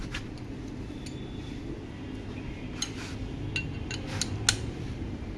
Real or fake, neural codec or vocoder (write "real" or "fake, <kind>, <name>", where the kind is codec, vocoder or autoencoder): real